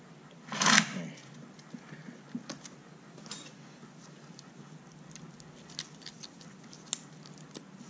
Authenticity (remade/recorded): recorded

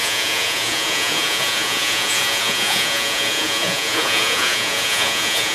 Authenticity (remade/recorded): remade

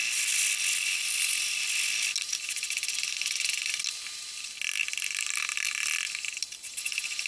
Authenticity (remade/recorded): recorded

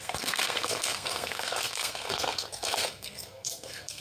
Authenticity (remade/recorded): remade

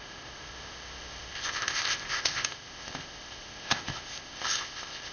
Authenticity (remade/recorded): remade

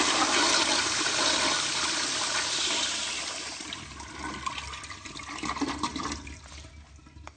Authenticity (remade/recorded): recorded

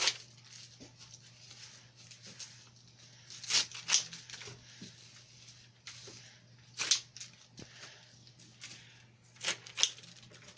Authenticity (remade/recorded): recorded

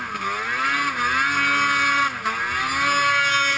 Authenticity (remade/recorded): recorded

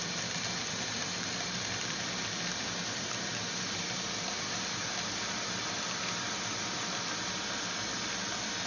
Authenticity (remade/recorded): recorded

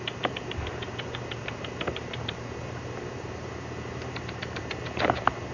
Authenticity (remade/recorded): remade